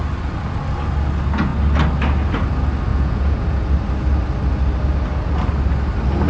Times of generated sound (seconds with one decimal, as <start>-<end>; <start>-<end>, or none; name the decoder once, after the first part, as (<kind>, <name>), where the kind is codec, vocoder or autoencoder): 2.9-3.7 (vocoder, Vocos)